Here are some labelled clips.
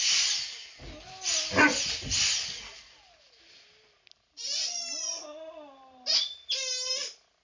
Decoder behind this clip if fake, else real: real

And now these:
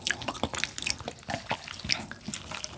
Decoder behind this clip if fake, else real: real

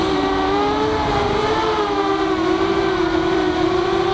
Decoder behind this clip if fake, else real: fake, vocoder, BigVGAN v2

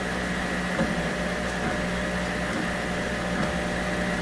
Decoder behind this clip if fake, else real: real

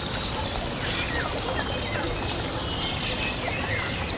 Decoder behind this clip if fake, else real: real